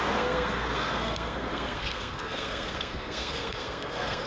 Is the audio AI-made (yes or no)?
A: yes